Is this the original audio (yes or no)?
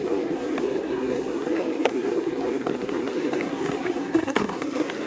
no